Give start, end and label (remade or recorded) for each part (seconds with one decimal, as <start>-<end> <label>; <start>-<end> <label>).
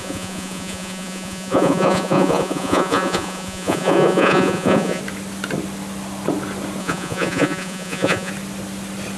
0.0-5.0 remade; 5.0-6.8 recorded; 6.8-8.3 remade; 8.3-9.2 recorded